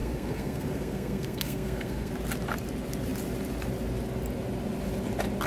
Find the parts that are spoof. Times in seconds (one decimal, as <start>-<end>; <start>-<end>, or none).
0.0-2.1